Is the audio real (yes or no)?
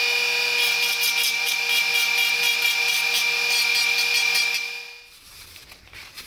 yes